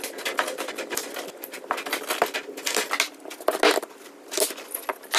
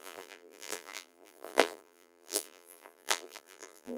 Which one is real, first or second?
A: first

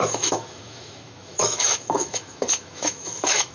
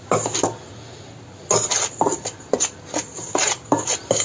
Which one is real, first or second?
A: second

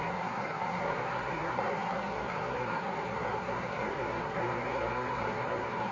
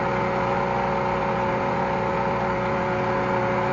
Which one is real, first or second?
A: second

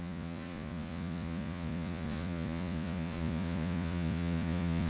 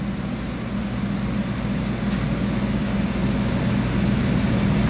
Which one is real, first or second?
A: second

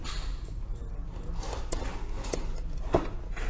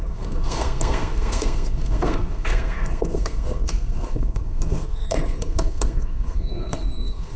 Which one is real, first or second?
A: first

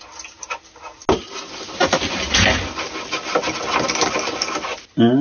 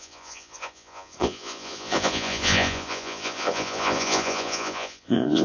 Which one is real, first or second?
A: first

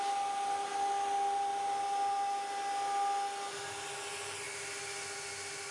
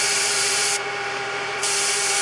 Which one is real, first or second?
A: first